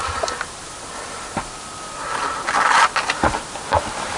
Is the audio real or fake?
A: real